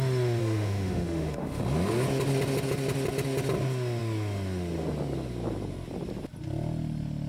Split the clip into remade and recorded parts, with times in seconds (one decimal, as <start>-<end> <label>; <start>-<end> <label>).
0.0-0.4 recorded; 0.4-1.6 remade; 1.6-7.3 recorded